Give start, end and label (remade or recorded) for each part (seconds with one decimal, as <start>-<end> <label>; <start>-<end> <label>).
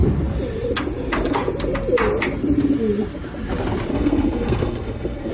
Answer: 0.0-3.9 recorded; 3.9-5.3 remade